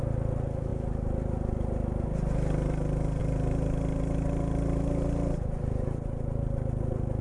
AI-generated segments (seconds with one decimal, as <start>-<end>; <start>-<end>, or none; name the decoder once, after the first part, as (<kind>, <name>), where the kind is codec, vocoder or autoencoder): none